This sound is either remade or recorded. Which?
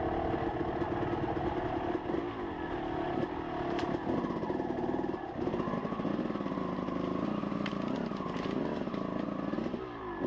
recorded